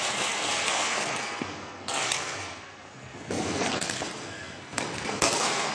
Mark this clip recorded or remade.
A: remade